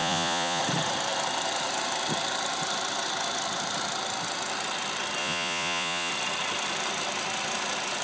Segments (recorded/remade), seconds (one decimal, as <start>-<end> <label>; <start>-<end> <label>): 0.0-0.6 remade; 0.6-5.2 recorded; 5.2-6.1 remade; 6.1-8.0 recorded